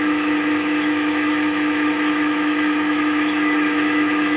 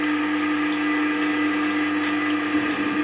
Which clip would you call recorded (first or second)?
second